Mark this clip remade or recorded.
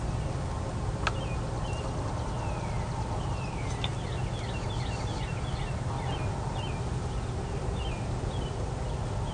recorded